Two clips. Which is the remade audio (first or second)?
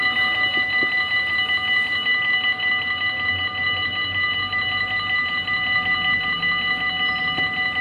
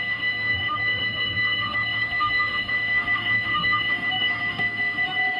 second